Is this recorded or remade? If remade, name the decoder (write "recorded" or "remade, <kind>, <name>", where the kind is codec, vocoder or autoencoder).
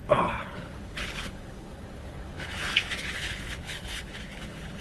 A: remade, codec, HILCodec